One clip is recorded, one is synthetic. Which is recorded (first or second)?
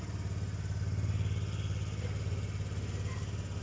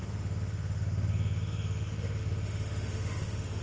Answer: first